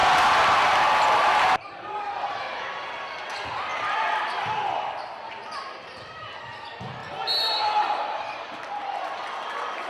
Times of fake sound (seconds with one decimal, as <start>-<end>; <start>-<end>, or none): 2.4-9.9